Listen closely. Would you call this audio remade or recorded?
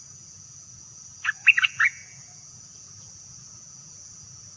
remade